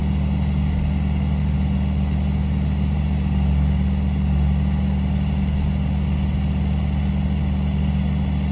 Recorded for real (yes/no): yes